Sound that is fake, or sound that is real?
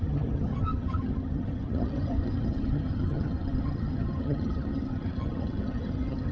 fake